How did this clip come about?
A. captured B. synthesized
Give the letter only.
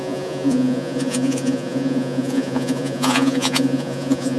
B